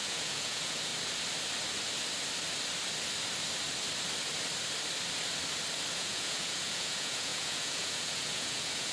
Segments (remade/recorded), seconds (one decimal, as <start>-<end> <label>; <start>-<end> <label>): 0.0-0.9 remade; 0.9-5.9 recorded; 5.9-8.9 remade